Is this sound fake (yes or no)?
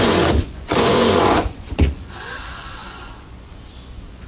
yes